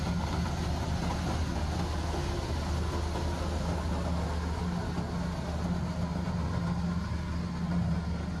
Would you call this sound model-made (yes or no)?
no